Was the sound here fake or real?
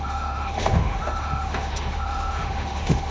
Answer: fake